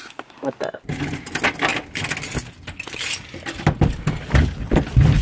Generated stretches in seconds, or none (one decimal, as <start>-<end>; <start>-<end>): none